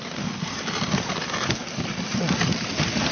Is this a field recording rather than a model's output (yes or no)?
yes